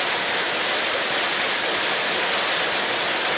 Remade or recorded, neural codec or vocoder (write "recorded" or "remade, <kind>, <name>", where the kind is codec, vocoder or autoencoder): recorded